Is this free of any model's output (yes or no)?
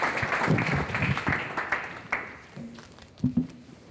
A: yes